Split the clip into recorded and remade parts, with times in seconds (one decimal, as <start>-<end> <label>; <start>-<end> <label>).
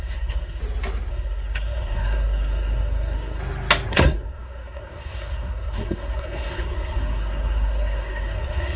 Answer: 0.0-0.6 remade; 0.6-1.1 recorded; 1.1-3.4 remade; 3.4-3.9 recorded; 3.9-8.8 remade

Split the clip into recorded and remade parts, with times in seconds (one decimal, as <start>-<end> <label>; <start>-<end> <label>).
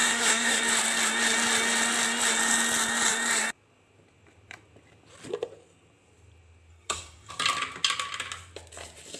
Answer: 0.0-0.6 remade; 0.6-6.7 recorded; 6.7-7.3 remade; 7.3-9.2 recorded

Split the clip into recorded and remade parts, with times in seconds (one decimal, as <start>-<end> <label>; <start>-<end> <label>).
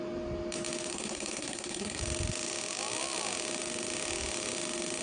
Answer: 0.0-0.9 recorded; 0.9-2.0 remade; 2.0-5.0 recorded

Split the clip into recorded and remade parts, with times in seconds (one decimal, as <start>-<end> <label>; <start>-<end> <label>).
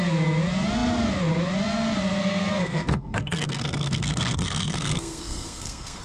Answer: 0.0-2.2 recorded; 2.2-6.0 remade